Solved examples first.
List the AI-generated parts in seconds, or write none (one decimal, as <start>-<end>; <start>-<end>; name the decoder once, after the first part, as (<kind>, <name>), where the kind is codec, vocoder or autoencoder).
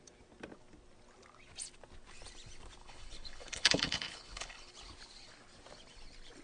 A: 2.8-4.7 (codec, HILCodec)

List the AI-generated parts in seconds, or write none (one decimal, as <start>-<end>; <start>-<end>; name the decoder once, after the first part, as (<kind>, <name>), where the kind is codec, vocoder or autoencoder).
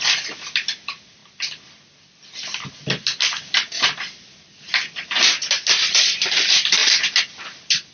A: none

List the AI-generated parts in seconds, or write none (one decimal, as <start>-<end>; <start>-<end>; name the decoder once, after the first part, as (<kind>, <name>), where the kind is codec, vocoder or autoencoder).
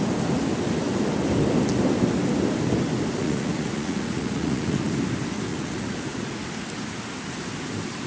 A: 3.2-4.9 (vocoder, Vocos); 5.5-6.4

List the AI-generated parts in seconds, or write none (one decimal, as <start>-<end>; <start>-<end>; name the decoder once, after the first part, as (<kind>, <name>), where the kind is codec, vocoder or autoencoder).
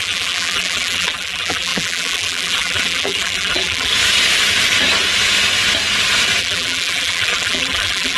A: 0.0-3.9 (vocoder, BigVGAN v2); 6.4-8.2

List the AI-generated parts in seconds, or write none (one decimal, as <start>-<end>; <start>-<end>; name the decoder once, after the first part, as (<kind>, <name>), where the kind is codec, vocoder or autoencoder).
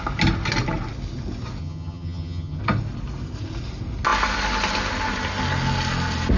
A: 1.6-2.6 (vocoder, HiFi-GAN)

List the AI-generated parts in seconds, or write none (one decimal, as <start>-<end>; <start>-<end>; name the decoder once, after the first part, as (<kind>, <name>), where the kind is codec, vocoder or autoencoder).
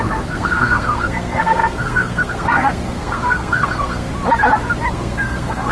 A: 0.0-4.1 (codec, SNAC); 4.9-5.7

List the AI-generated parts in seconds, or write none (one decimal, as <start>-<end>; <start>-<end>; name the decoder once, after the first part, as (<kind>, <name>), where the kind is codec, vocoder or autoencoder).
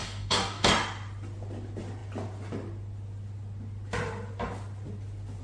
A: 0.0-0.7 (codec, DAC)